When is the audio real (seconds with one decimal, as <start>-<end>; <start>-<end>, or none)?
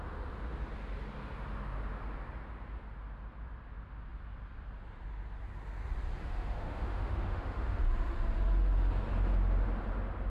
0.0-6.2; 7.8-10.3